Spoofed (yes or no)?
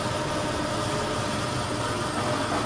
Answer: no